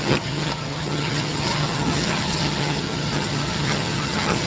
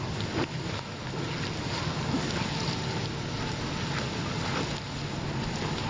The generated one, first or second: first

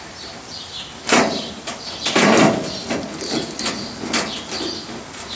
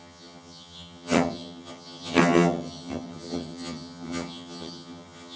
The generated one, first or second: second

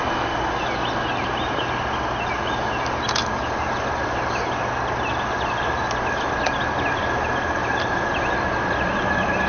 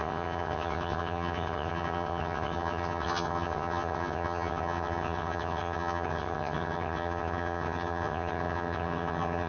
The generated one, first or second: second